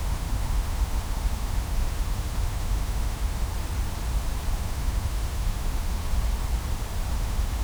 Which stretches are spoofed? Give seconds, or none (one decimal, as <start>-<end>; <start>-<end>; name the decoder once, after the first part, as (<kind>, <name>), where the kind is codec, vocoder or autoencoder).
0.0-3.5 (autoencoder, DAC-VAE); 4.5-6.0; 7.1-7.6